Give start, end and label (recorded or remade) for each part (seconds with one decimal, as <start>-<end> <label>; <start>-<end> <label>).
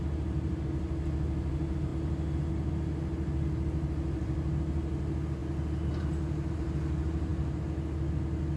0.0-8.6 recorded